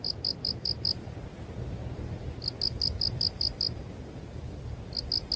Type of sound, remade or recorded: recorded